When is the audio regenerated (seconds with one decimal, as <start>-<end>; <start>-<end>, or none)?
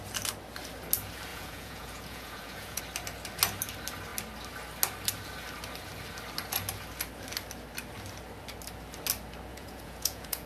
1.3-2.8; 9.5-10.5